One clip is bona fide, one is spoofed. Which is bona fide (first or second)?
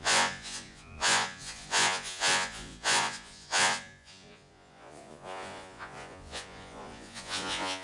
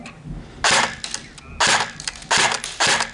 second